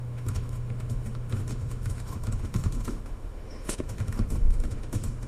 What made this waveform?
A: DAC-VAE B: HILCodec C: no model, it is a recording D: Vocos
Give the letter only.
A